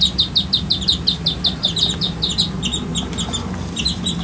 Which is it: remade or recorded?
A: recorded